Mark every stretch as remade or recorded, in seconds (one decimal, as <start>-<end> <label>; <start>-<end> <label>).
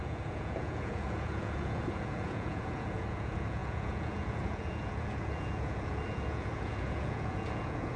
0.0-8.0 remade